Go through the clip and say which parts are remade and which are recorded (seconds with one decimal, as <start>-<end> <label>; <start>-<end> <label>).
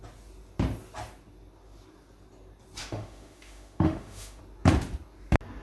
0.0-2.8 recorded; 2.8-4.4 remade; 4.4-5.6 recorded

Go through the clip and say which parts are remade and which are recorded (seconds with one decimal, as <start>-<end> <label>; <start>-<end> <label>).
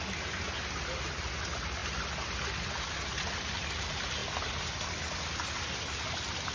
0.0-6.5 recorded